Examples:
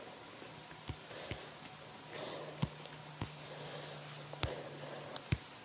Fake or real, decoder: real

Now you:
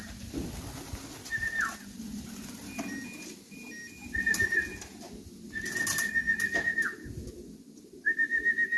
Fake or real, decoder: real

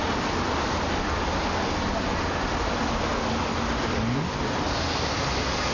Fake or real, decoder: real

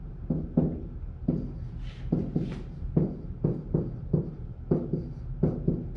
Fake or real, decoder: real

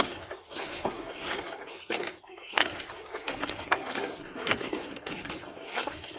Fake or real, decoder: fake, codec, SNAC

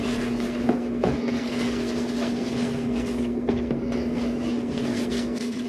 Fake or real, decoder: fake, codec, SNAC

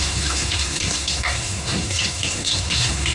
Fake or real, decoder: fake, codec, SNAC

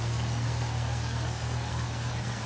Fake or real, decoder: fake, codec, SNAC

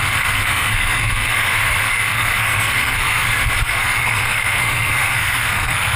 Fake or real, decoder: fake, codec, SNAC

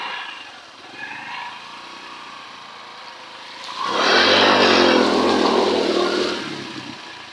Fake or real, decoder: real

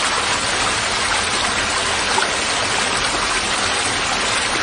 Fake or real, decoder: real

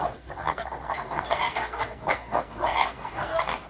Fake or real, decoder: fake, codec, SNAC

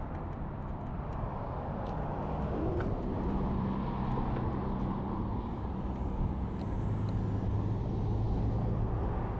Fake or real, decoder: real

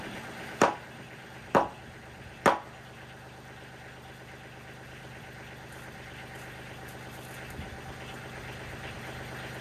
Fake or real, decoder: real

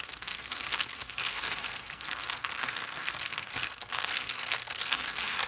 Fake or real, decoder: fake, codec, SNAC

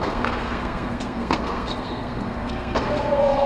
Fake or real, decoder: fake, codec, SNAC